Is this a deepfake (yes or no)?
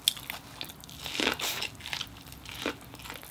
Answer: no